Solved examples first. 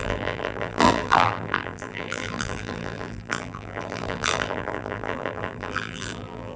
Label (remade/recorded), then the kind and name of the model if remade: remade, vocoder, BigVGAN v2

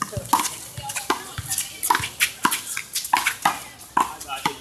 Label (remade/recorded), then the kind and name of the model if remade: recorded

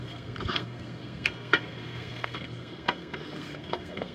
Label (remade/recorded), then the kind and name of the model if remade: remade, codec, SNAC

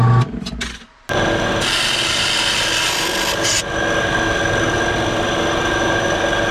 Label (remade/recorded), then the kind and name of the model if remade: recorded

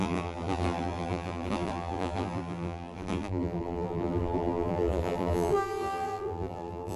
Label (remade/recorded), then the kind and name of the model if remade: remade, vocoder, BigVGAN v2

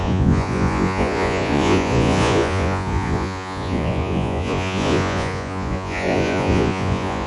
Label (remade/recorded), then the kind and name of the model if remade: remade, vocoder, Vocos